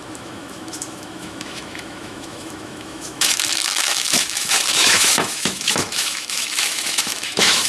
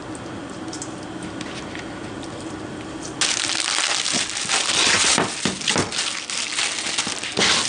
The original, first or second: second